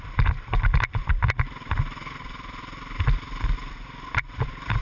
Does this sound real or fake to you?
fake